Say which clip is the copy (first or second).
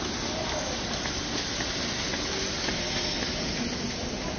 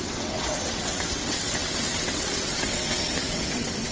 second